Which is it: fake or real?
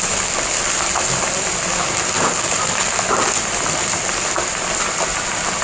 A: fake